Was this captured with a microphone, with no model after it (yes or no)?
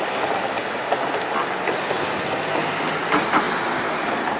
yes